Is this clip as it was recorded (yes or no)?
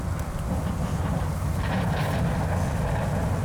yes